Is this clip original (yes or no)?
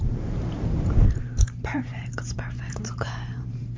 no